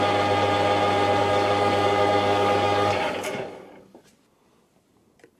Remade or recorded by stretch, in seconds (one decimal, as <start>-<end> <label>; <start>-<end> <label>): 0.0-1.2 recorded; 1.2-4.0 remade; 4.0-5.4 recorded